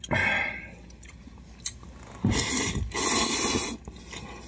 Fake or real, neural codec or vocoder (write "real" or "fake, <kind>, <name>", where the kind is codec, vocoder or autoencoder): real